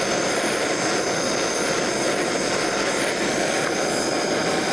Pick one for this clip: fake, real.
real